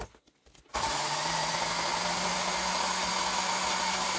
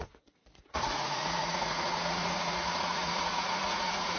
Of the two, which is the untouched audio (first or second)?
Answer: first